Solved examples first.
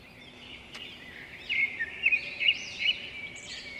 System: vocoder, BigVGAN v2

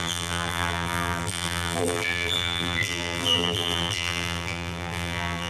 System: vocoder, BigVGAN v2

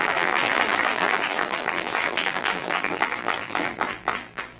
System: vocoder, BigVGAN v2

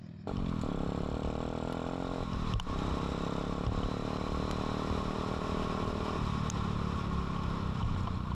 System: none